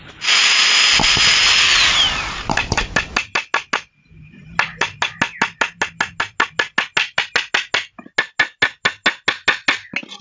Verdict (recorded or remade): recorded